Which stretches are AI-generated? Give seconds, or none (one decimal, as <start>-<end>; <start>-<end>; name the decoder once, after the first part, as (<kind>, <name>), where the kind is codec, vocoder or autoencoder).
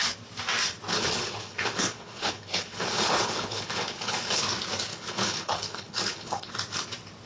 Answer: 0.9-4.4 (codec, HILCodec); 4.9-6.5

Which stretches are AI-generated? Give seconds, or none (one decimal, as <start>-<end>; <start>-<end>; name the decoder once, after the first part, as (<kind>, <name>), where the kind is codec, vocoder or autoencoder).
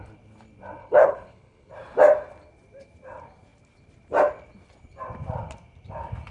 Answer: 0.8-1.7 (codec, HILCodec)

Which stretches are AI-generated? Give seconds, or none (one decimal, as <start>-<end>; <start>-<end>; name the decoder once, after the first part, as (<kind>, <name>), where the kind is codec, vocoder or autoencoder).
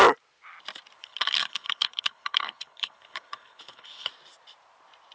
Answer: 1.0-4.1 (codec, HILCodec)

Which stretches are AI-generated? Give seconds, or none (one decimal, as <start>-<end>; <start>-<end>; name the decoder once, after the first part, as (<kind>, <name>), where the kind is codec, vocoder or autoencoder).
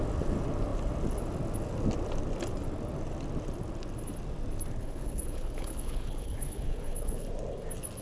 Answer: 4.8-7.3 (codec, HILCodec)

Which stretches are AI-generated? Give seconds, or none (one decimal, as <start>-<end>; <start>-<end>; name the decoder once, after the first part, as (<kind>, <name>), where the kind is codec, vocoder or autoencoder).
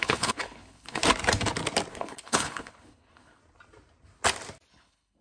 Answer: 0.0-1.0 (codec, HILCodec); 1.9-3.4; 4.7-5.2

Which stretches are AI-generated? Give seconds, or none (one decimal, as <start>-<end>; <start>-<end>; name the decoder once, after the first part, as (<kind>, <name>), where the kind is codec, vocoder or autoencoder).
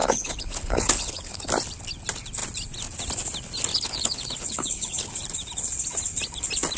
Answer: 0.0-1.5 (codec, HILCodec); 3.7-5.1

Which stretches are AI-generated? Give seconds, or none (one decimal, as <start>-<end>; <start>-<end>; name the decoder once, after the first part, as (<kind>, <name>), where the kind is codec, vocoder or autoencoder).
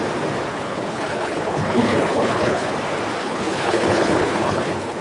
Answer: 0.5-2.7 (codec, HILCodec); 3.2-5.0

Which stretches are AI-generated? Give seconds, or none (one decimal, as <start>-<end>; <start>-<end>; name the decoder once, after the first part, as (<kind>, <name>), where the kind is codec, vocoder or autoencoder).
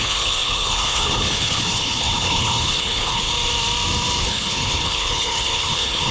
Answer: 0.0-3.3 (codec, HILCodec); 4.2-6.1